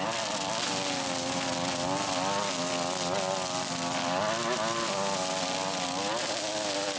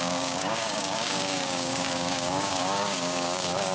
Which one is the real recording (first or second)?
first